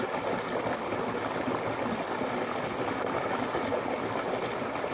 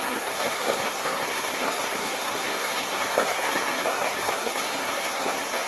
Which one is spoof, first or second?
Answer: second